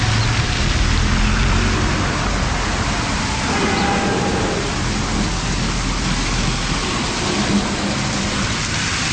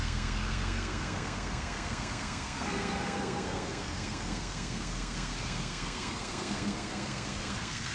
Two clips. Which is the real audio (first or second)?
first